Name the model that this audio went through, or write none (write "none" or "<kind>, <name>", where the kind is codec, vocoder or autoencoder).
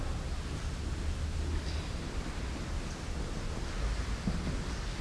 none